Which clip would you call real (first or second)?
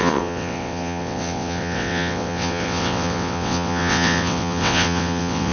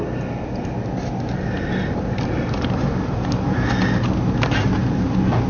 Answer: second